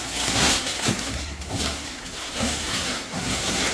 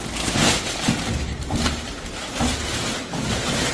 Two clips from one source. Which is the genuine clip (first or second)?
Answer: second